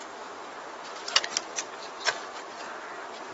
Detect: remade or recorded recorded